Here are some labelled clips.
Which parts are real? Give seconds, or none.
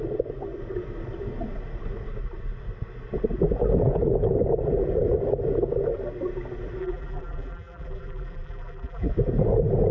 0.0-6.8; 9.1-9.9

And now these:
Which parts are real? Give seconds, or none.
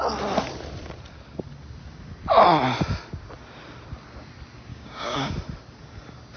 0.0-4.7; 5.3-6.4